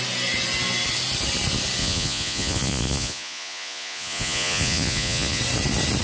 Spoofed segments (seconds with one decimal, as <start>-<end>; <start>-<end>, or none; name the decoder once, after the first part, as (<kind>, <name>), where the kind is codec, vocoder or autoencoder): 1.8-5.4 (vocoder, Vocos)